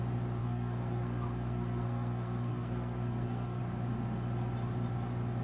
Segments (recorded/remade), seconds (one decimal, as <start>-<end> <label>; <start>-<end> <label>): 0.0-0.4 recorded; 0.4-3.6 remade; 3.6-5.4 recorded